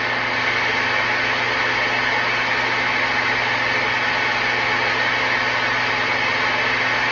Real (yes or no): yes